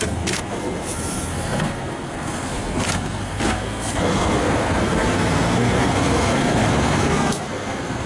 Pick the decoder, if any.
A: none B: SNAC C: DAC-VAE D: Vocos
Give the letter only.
B